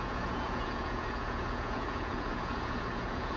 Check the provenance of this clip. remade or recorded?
remade